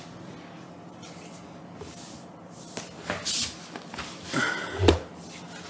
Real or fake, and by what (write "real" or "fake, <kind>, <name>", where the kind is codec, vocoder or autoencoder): real